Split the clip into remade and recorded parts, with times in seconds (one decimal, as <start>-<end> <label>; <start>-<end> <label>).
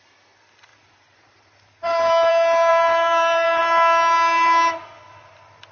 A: 0.0-0.7 recorded; 0.7-2.3 remade; 2.3-2.7 recorded; 2.7-3.6 remade; 3.6-5.7 recorded